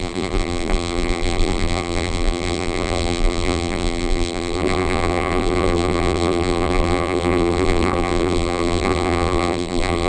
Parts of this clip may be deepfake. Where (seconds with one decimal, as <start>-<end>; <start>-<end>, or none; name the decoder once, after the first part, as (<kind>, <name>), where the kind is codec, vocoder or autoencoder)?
0.0-10.1 (vocoder, BigVGAN v2)